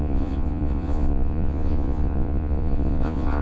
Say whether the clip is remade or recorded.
remade